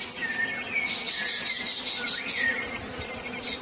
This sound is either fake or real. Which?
real